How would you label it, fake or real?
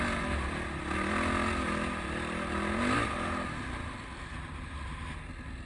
real